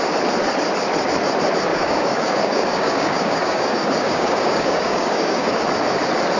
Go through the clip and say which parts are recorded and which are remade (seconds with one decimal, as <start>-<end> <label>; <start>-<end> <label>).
0.0-1.7 recorded; 1.7-5.5 remade; 5.5-6.4 recorded